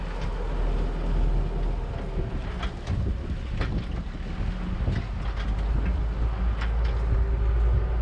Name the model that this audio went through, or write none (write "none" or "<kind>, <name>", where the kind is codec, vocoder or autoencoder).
none